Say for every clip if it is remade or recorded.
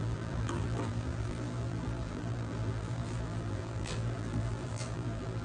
remade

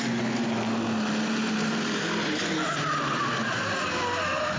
recorded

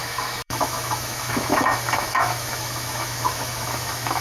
remade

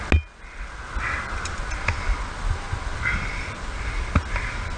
recorded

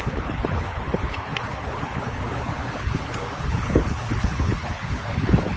remade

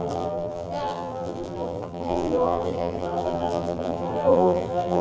remade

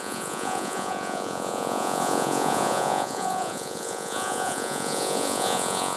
remade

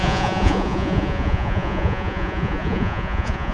remade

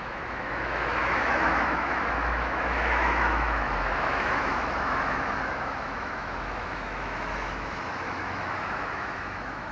remade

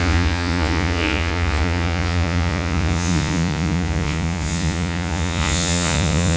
remade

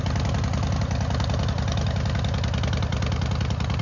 recorded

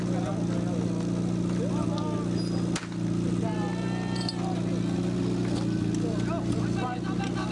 recorded